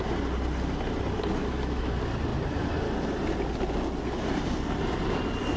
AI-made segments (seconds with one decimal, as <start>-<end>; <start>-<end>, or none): 1.4-1.9